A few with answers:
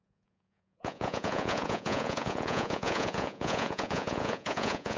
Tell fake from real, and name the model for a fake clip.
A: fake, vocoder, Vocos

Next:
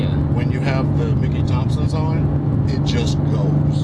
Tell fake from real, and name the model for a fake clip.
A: real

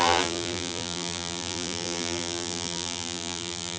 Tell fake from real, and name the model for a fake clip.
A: fake, vocoder, BigVGAN v2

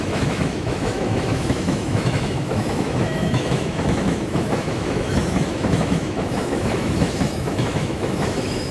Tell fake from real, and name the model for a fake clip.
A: fake, autoencoder, DAC-VAE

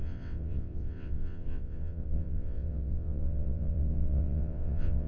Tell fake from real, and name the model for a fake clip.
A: fake, vocoder, WaveNeXt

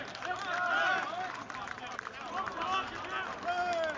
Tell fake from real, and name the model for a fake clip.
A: real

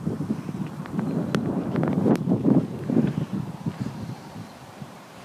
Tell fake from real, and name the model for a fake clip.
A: fake, vocoder, BigVGAN v2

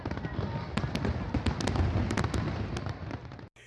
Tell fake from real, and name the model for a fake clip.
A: real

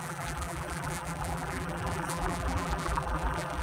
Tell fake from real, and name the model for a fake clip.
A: fake, vocoder, BigVGAN v2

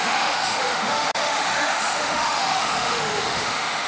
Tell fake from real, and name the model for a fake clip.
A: fake, autoencoder, DAC-VAE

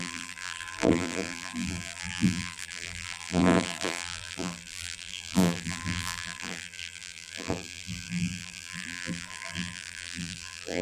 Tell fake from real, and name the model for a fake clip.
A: fake, vocoder, BigVGAN v2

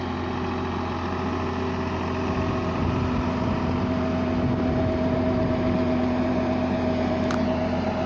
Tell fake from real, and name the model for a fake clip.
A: real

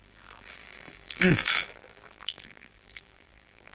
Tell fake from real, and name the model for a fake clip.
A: fake, vocoder, BigVGAN v2